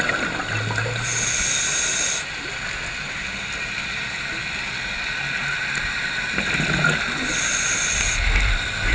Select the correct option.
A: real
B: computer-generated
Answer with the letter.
A